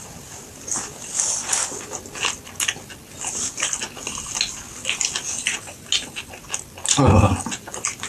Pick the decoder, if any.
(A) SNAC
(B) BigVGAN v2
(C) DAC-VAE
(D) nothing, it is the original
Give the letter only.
D